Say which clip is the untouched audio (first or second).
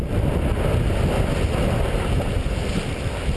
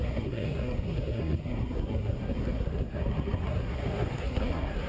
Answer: first